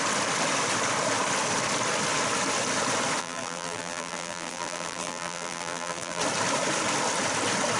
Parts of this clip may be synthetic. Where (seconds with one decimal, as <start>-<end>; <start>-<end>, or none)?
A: 3.2-6.2